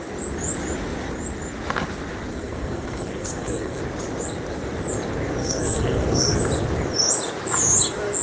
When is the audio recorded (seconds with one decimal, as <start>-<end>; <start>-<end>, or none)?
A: 0.0-2.3; 3.8-5.4; 6.4-8.2